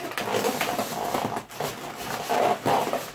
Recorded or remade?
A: recorded